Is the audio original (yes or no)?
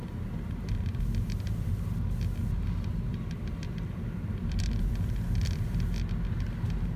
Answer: yes